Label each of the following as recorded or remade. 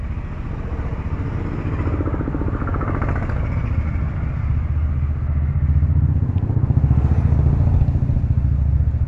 recorded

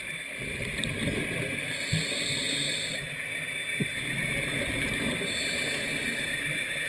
recorded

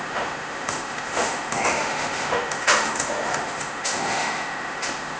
remade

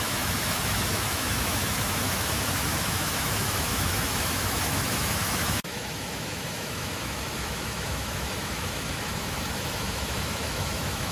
remade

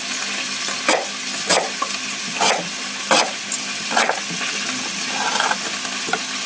recorded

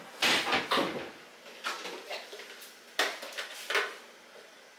recorded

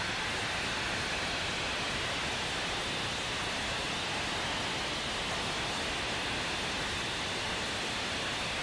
recorded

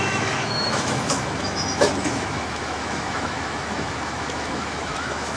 remade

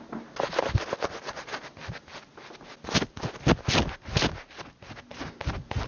recorded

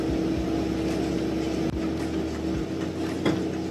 recorded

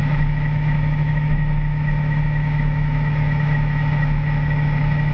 remade